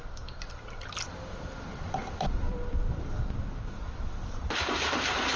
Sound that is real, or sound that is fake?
fake